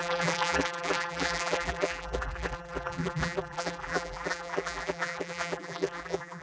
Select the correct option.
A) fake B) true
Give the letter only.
A